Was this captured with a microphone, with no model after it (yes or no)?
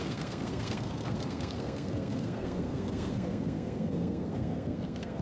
no